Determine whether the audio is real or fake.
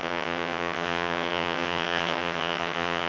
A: fake